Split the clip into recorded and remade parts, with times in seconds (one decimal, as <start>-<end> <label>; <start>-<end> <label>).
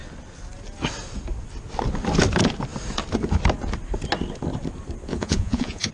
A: 0.0-5.1 recorded; 5.1-5.9 remade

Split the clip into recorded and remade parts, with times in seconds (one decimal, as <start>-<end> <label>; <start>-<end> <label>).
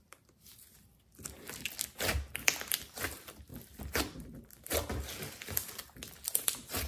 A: 0.0-0.7 remade; 0.7-2.3 recorded; 2.3-3.5 remade; 3.5-6.4 recorded; 6.4-6.9 remade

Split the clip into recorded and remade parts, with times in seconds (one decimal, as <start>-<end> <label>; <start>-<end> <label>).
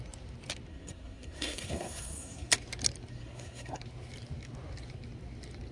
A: 0.0-0.7 recorded; 0.7-2.5 remade; 2.5-3.1 recorded; 3.1-3.8 remade; 3.8-5.7 recorded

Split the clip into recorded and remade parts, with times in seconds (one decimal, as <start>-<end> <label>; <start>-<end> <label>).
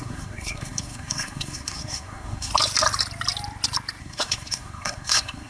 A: 0.0-2.5 remade; 2.5-4.0 recorded; 4.0-5.5 remade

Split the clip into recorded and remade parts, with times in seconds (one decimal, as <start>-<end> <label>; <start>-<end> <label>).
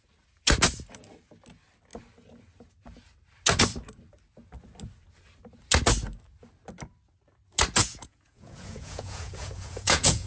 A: 0.0-7.8 recorded; 7.8-10.3 remade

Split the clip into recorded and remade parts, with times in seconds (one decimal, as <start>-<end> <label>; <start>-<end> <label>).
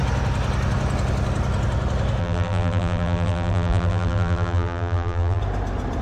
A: 0.0-2.2 recorded; 2.2-5.4 remade; 5.4-6.0 recorded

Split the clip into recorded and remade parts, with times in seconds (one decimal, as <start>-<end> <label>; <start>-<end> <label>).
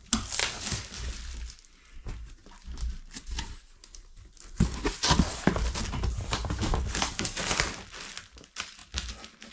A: 0.0-0.4 recorded; 0.4-1.1 remade; 1.1-6.7 recorded; 6.7-7.4 remade; 7.4-9.5 recorded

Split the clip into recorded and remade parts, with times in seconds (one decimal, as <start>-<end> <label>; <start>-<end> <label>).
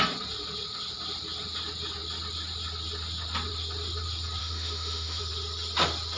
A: 0.0-4.4 recorded; 4.4-5.2 remade; 5.2-6.2 recorded